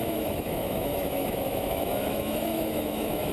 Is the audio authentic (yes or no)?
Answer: no